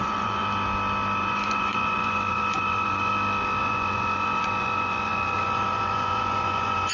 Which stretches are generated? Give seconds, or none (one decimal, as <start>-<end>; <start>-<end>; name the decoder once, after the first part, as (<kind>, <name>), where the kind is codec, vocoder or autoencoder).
0.0-0.4 (vocoder, Vocos); 1.2-3.1; 3.6-6.9